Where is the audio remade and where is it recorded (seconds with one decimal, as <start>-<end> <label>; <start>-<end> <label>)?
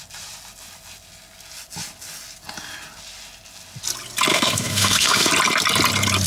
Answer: 0.0-4.3 recorded; 4.3-5.3 remade; 5.3-6.3 recorded